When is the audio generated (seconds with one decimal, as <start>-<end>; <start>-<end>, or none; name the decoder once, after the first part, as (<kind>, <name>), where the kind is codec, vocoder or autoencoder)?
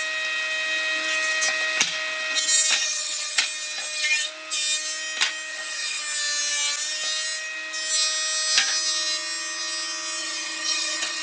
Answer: 2.8-3.4 (vocoder, HiFi-GAN); 5.5-6.0; 10.2-11.2